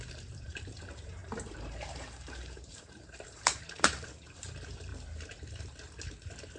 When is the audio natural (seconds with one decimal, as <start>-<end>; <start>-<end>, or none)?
4.9-6.6